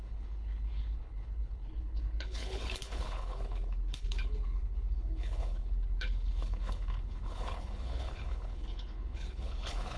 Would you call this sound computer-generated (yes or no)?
yes